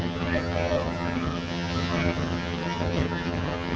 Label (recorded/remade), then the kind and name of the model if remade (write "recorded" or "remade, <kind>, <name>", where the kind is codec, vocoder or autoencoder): remade, vocoder, HiFi-GAN